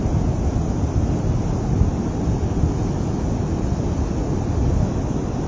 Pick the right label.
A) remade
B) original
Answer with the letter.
B